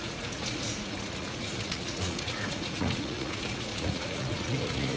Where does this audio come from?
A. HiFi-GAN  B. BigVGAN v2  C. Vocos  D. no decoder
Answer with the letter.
C